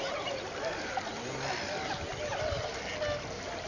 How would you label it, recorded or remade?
recorded